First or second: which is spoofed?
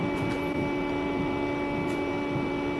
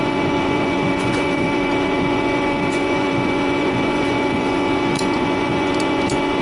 second